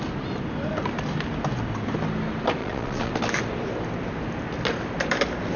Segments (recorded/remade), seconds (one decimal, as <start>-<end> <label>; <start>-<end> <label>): 0.0-2.6 recorded; 2.6-3.1 remade; 3.1-5.6 recorded